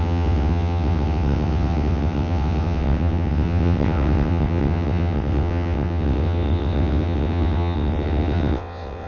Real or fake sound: fake